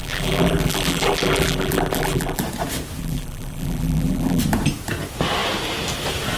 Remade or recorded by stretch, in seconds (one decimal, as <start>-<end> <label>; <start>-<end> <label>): 0.0-2.4 remade; 2.4-3.0 recorded; 3.0-4.4 remade; 4.4-6.4 recorded